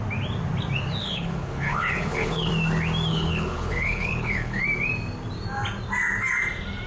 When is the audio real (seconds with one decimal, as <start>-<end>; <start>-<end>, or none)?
0.0-1.0; 2.5-3.1; 4.6-6.9